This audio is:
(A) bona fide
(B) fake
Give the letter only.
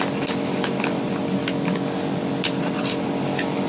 A